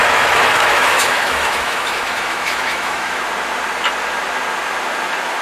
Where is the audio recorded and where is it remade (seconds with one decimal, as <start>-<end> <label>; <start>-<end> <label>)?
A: 0.0-3.2 remade; 3.2-5.4 recorded